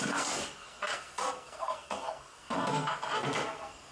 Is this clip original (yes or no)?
no